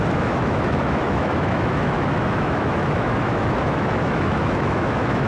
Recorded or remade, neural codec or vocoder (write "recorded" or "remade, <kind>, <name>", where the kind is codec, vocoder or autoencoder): remade, autoencoder, DAC-VAE